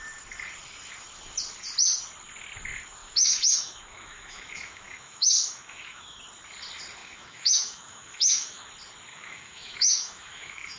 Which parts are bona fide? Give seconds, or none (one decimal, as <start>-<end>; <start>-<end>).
0.0-3.0; 6.2-7.0; 8.7-9.1